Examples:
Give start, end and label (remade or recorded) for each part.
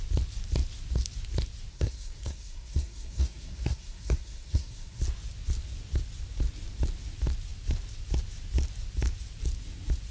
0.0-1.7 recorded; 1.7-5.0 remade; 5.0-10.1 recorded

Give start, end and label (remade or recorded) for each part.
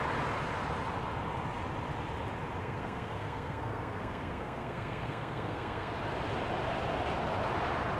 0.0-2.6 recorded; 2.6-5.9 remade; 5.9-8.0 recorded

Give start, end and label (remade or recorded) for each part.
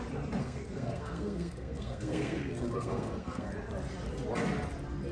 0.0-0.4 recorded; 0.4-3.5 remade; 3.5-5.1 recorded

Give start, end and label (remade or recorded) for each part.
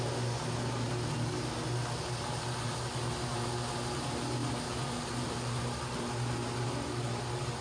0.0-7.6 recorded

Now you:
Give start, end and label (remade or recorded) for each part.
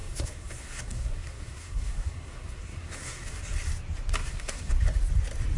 0.0-3.4 remade; 3.4-4.2 recorded; 4.2-4.7 remade; 4.7-5.6 recorded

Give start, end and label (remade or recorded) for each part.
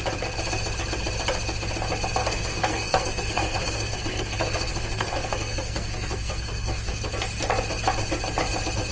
0.0-2.2 recorded; 2.2-7.0 remade; 7.0-8.9 recorded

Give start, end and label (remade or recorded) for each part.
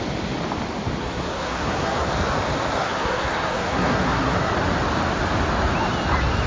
0.0-1.0 recorded; 1.0-2.1 remade; 2.1-2.8 recorded; 2.8-4.5 remade; 4.5-6.5 recorded